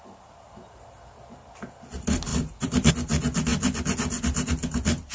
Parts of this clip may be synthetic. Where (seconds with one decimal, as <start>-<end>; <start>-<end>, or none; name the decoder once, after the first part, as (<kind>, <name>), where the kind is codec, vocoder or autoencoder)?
2.3-2.9 (vocoder, BigVGAN v2)